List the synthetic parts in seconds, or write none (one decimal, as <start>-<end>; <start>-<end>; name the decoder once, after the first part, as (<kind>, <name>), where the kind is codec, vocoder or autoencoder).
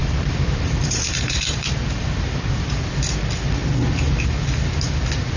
0.0-3.2 (vocoder, BigVGAN v2)